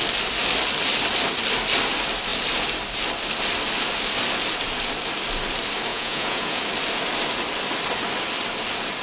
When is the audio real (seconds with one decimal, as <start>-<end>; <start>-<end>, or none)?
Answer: 0.0-5.9; 6.6-9.0